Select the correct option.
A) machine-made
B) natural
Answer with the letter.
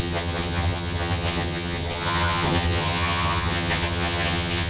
A